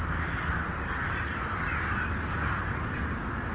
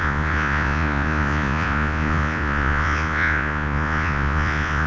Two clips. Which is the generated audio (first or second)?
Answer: second